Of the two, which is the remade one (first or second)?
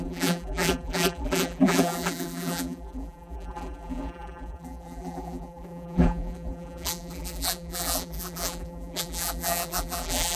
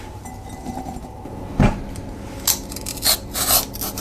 first